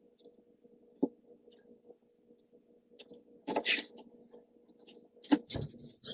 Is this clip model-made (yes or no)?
no